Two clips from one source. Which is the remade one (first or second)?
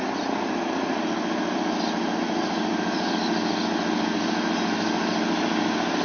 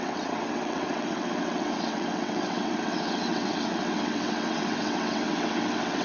second